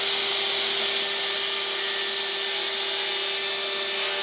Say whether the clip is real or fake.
real